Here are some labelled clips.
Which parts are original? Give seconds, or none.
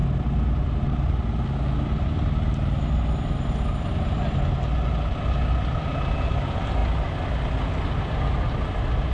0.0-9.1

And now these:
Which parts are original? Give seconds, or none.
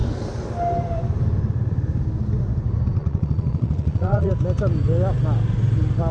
0.0-3.0; 4.3-6.1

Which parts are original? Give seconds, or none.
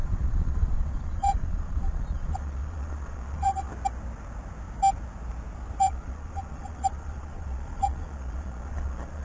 3.7-5.8